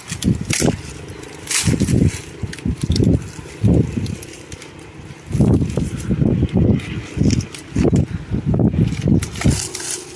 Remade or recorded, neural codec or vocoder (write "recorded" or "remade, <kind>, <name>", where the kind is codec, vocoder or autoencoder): recorded